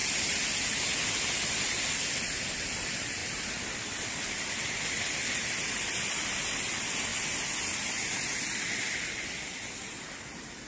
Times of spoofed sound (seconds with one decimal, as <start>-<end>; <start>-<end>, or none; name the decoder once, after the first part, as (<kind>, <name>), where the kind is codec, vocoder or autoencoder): 0.0-0.5 (vocoder, BigVGAN v2); 3.2-6.4